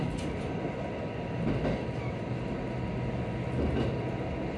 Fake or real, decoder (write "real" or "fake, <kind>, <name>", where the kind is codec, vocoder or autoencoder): real